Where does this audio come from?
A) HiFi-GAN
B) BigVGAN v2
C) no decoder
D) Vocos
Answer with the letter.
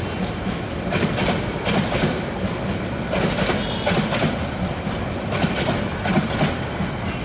C